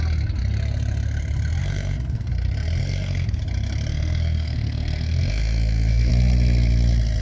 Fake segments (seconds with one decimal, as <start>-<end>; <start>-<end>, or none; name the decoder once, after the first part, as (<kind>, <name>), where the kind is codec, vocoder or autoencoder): 1.6-2.3 (codec, SNAC); 2.8-3.4; 3.9-6.1